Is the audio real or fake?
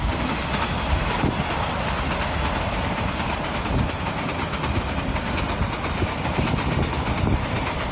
real